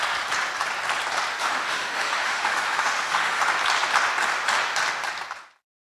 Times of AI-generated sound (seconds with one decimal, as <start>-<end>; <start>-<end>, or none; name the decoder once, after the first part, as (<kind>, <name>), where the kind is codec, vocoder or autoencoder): 1.4-3.4 (autoencoder, DAC-VAE)

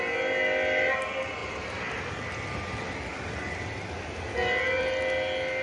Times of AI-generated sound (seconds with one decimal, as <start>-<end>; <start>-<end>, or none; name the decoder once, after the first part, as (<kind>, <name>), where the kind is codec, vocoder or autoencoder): none

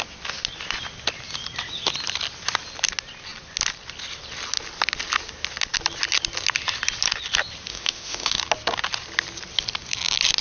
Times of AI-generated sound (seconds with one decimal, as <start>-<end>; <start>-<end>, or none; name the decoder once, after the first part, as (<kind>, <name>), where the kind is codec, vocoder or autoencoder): 7.7-8.4 (autoencoder, DAC-VAE)

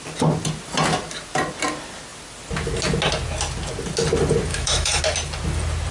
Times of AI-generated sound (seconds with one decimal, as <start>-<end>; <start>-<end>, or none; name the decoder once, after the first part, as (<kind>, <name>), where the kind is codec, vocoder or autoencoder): 4.5-5.0 (autoencoder, DAC-VAE)

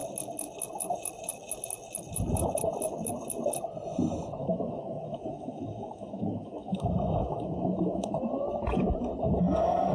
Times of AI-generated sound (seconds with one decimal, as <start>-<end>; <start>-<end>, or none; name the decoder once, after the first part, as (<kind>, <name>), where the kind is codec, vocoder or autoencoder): 4.4-8.1 (autoencoder, DAC-VAE)